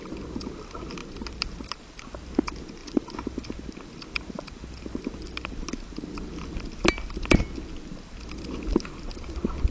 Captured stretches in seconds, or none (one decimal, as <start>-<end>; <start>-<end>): 0.0-9.7